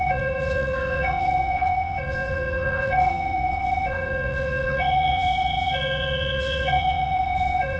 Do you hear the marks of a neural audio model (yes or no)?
yes